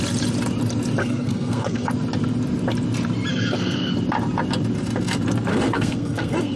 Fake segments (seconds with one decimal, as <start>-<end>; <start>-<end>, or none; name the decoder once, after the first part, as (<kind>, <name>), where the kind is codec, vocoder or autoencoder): 1.0-1.9 (codec, SNAC); 3.3-3.9; 5.5-6.6